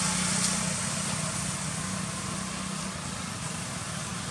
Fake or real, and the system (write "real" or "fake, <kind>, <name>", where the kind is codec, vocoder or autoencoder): real